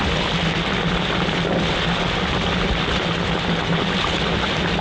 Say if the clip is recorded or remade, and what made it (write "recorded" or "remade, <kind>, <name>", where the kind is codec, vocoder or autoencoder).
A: recorded